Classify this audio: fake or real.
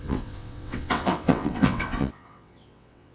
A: fake